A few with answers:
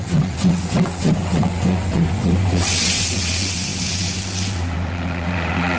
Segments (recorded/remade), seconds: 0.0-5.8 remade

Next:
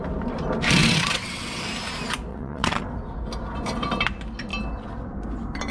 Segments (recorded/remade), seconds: 0.0-0.8 recorded; 0.8-1.6 remade; 1.6-2.3 recorded; 2.3-2.8 remade; 2.8-5.7 recorded

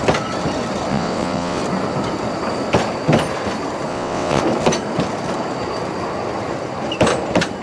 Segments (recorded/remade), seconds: 0.0-0.9 recorded; 0.9-1.6 remade; 1.6-3.9 recorded; 3.9-4.4 remade; 4.4-7.6 recorded

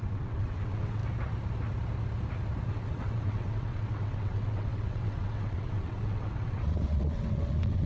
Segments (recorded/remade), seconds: 0.0-1.0 remade; 1.0-2.7 recorded; 2.7-7.9 remade